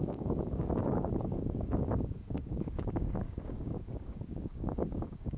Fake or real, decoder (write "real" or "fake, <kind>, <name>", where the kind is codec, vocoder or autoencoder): fake, codec, DAC